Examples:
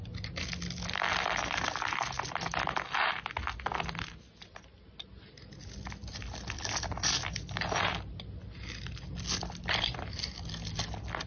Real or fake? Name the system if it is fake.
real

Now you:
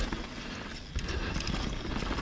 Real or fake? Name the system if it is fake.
real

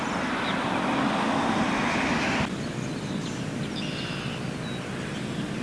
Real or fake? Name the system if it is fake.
real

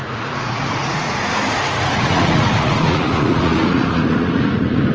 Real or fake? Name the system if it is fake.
fake, vocoder, Vocos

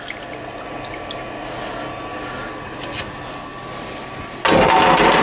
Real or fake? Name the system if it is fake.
real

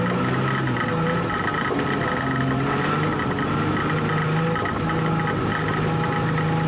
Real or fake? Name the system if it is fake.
real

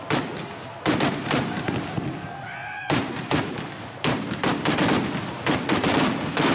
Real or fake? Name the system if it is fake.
real